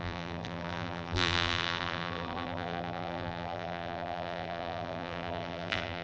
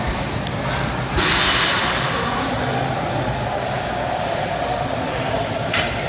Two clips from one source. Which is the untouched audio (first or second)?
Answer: second